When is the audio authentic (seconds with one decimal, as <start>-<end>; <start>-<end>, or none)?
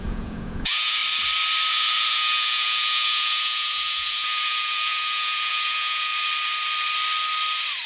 1.0-1.7; 6.1-7.9